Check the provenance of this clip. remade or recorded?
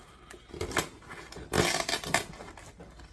recorded